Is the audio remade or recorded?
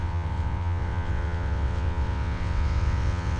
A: remade